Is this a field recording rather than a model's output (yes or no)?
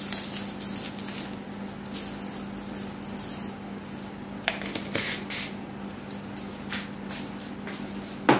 yes